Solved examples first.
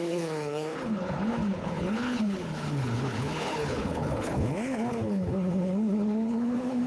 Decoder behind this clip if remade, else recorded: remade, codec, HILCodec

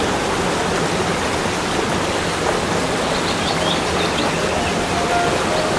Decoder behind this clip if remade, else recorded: recorded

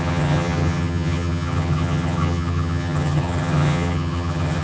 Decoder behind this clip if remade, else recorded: remade, vocoder, HiFi-GAN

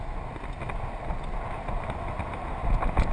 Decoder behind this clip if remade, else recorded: recorded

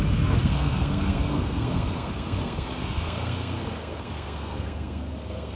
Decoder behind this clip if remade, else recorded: remade, codec, SNAC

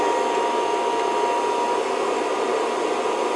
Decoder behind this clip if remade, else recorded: recorded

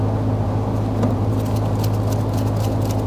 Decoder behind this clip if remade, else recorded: recorded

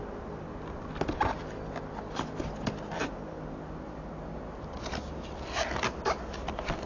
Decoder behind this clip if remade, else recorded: recorded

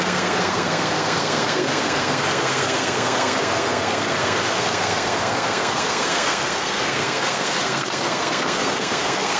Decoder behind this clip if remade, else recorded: remade, codec, SNAC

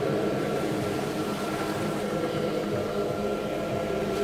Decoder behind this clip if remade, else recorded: recorded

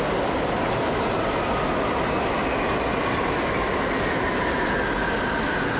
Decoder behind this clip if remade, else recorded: recorded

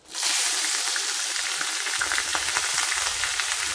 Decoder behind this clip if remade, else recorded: recorded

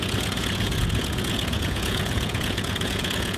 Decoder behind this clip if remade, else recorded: remade, vocoder, Vocos